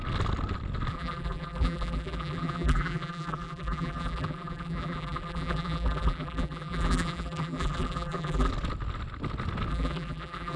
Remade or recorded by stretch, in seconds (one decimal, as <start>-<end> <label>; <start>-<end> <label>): 0.0-0.9 recorded; 0.9-8.5 remade; 8.5-9.7 recorded; 9.7-10.6 remade